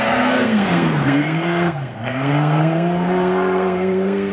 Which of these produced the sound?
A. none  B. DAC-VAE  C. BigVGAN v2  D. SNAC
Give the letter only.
D